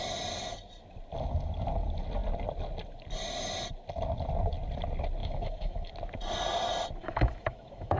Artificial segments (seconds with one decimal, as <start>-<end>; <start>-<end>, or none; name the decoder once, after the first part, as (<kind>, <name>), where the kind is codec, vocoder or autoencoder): 5.2-5.9 (autoencoder, DAC-VAE); 7.0-8.0